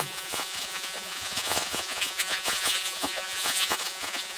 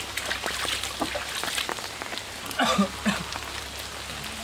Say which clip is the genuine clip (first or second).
second